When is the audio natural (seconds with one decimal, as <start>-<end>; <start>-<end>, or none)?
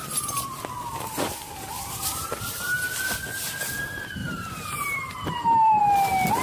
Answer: 2.9-4.2; 5.8-6.4